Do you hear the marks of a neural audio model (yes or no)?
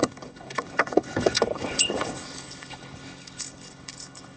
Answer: yes